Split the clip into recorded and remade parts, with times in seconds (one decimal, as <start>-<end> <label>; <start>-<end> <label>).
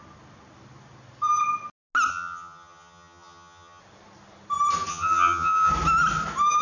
0.0-2.1 recorded; 2.1-3.8 remade; 3.8-4.9 recorded; 4.9-5.7 remade; 5.7-6.6 recorded